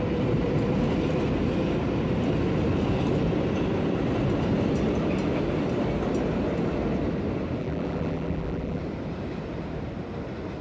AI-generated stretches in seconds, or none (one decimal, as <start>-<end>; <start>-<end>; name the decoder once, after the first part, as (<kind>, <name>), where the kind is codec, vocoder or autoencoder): 7.6-8.8 (vocoder, BigVGAN v2)